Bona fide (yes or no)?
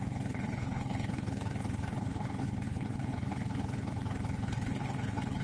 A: no